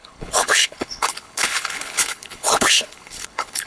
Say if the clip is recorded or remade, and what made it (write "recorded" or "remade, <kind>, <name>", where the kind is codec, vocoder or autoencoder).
remade, codec, HILCodec